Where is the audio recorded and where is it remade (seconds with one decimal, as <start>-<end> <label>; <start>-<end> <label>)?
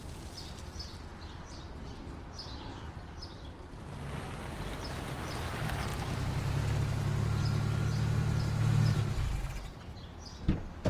0.0-10.9 recorded